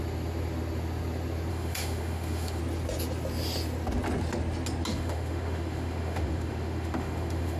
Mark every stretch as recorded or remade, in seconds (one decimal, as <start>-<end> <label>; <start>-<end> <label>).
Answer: 0.0-1.5 recorded; 1.5-2.6 remade; 2.6-4.9 recorded; 4.9-7.6 remade